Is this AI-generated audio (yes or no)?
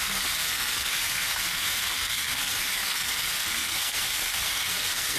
yes